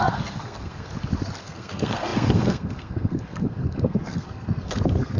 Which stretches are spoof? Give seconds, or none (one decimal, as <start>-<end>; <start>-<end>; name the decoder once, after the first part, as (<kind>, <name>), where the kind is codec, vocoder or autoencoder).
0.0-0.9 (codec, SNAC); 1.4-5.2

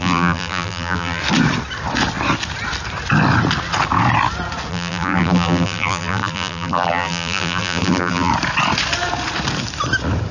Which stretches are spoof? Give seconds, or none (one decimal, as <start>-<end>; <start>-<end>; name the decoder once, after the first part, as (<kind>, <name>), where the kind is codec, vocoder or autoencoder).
0.0-1.2 (vocoder, BigVGAN v2); 4.7-8.3

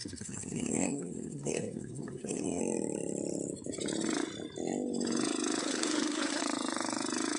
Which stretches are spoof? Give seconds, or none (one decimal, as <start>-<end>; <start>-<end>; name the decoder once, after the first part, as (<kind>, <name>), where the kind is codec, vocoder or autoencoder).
0.0-2.6 (codec, SNAC); 5.6-6.4

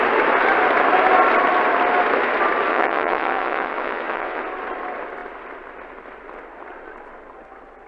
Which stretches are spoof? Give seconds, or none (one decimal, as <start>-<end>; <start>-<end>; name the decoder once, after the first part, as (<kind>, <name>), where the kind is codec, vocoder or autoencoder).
2.7-4.4 (vocoder, WaveNeXt)

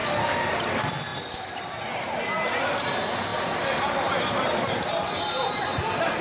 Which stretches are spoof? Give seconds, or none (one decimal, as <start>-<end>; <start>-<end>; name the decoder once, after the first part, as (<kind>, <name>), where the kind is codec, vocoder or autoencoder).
none

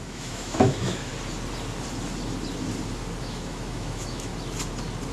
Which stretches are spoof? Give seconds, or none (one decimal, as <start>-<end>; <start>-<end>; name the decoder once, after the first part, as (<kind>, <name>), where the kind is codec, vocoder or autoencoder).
0.0-1.1 (autoencoder, DAC-VAE); 3.2-4.3